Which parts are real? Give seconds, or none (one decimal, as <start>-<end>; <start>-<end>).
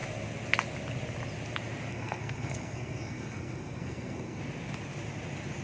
0.0-1.9; 4.4-5.6